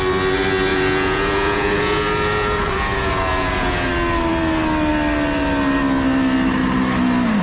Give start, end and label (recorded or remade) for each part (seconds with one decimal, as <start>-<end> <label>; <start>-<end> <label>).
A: 0.0-0.7 recorded; 0.7-3.9 remade; 3.9-7.4 recorded